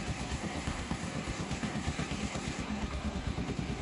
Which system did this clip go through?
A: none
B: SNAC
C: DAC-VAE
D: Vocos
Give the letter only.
B